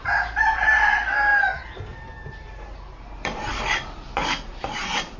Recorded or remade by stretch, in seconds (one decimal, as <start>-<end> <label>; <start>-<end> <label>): 0.0-5.2 recorded